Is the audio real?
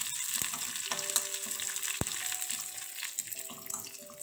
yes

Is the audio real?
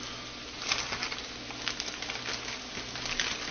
yes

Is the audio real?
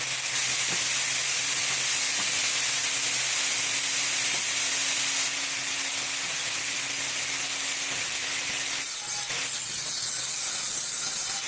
yes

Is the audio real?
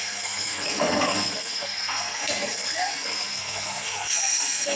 no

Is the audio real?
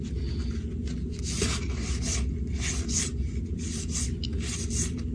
yes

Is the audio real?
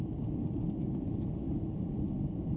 yes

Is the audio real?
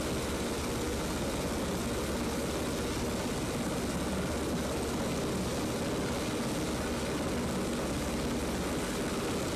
yes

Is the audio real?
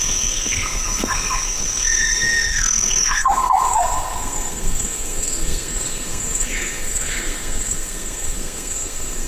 no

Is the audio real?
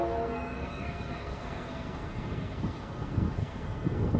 no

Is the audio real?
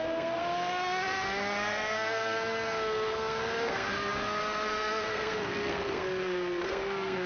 no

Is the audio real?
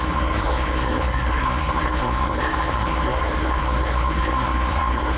no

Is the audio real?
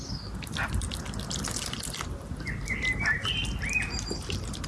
yes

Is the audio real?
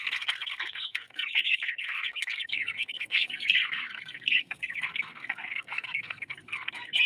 no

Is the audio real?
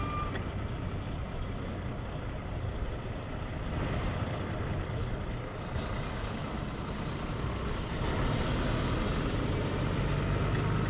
yes